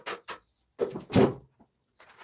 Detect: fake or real real